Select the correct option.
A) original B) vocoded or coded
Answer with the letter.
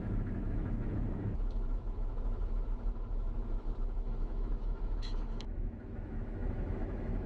B